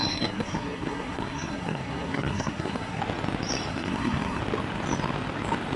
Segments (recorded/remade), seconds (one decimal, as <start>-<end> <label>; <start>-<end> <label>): 0.0-3.0 remade; 3.0-3.7 recorded; 3.7-4.4 remade; 4.4-5.8 recorded